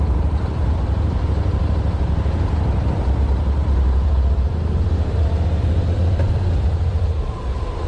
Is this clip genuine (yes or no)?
no